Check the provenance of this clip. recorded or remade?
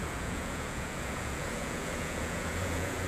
remade